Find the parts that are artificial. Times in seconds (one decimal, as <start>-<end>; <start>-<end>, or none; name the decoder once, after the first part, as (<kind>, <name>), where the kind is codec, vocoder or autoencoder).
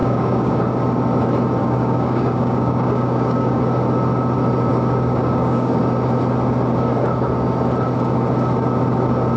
0.0-0.5 (codec, DAC); 1.6-3.6; 4.7-5.8